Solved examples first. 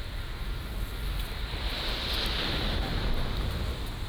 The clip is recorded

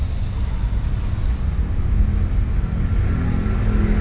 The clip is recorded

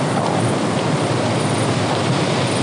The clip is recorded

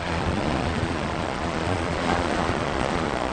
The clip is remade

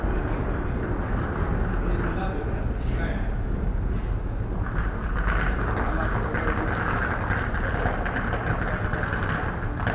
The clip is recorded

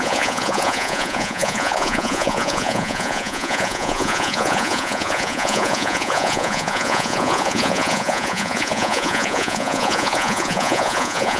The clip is remade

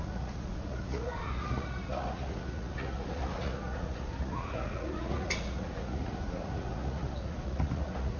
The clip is remade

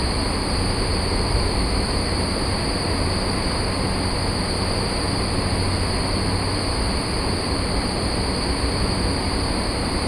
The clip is recorded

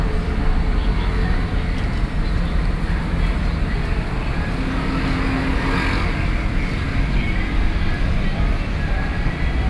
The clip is recorded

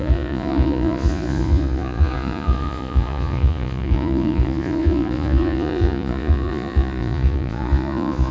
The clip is remade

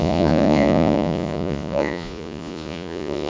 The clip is remade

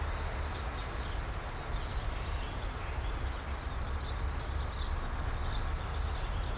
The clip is recorded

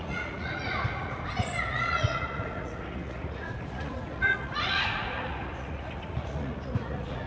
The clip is remade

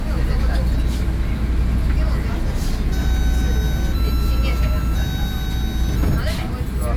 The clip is recorded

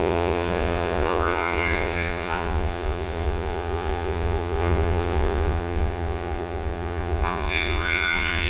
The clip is remade